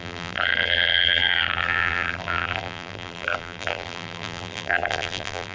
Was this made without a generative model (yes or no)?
no